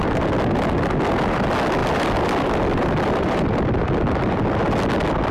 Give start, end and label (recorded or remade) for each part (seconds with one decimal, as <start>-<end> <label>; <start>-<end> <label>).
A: 0.0-1.8 recorded; 1.8-4.7 remade; 4.7-5.3 recorded

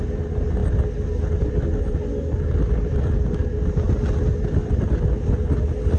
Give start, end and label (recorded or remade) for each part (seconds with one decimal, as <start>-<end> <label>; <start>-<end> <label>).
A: 0.0-6.0 recorded